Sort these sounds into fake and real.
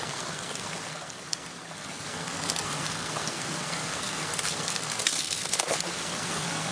fake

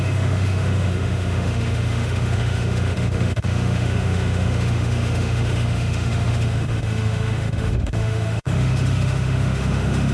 fake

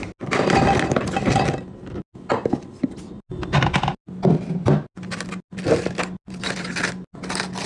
real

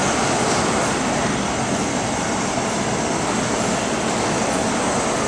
real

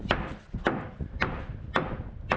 real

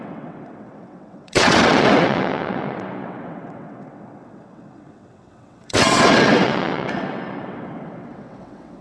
fake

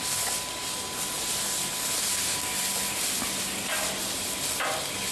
real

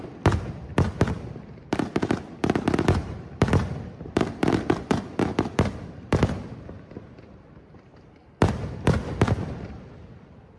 fake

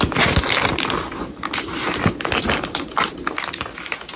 real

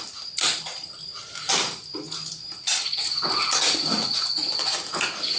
real